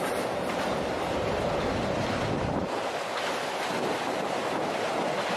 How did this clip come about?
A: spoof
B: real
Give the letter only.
B